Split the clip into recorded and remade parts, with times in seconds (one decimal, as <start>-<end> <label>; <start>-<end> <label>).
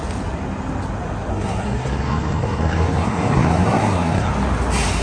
0.0-1.3 recorded; 1.3-4.3 remade; 4.3-5.0 recorded